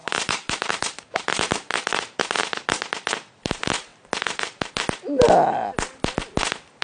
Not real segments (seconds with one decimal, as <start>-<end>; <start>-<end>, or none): 0.0-2.2; 3.9-4.7